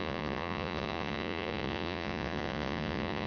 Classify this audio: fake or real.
fake